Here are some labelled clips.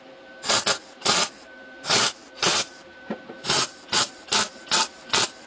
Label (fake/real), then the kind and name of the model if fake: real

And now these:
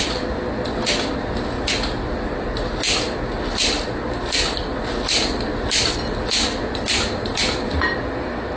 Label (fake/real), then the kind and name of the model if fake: real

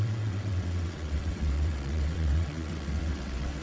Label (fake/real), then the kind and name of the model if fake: fake, vocoder, WaveNeXt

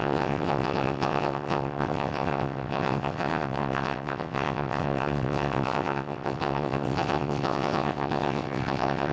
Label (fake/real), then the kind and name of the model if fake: fake, vocoder, WaveNeXt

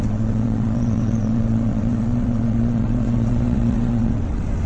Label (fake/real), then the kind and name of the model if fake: fake, vocoder, WaveNeXt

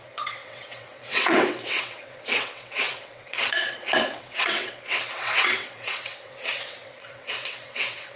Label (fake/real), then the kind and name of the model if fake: fake, vocoder, WaveNeXt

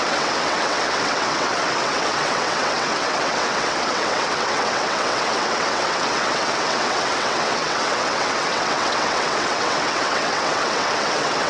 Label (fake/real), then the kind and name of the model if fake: fake, vocoder, WaveNeXt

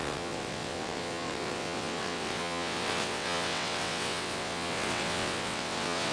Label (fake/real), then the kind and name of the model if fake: fake, vocoder, WaveNeXt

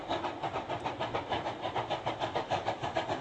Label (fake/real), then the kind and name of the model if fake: real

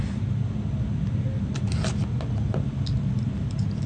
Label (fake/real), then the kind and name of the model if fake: real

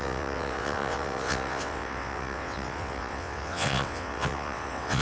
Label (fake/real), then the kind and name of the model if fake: fake, vocoder, WaveNeXt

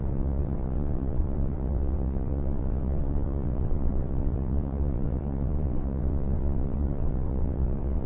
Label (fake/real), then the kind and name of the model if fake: fake, vocoder, WaveNeXt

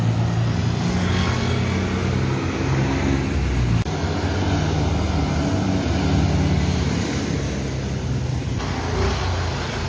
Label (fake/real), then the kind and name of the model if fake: real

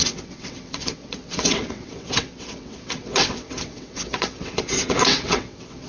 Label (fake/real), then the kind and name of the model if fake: fake, vocoder, WaveNeXt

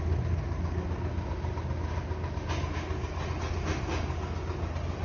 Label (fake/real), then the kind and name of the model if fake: real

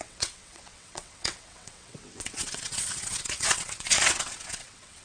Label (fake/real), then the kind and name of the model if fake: fake, vocoder, WaveNeXt